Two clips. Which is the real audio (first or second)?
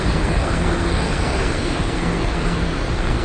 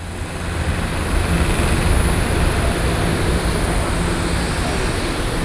second